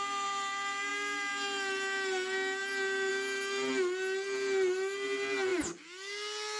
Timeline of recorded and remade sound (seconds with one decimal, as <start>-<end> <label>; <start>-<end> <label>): 0.0-6.6 recorded